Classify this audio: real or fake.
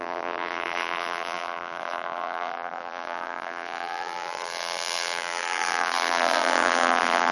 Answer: fake